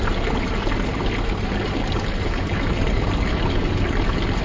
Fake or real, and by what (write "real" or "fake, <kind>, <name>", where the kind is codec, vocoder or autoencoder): real